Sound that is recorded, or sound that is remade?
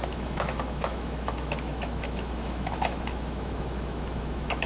remade